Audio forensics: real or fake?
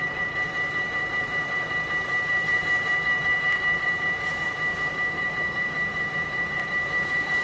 fake